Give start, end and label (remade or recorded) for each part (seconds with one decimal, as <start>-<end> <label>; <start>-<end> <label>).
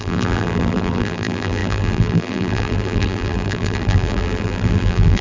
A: 0.0-5.2 remade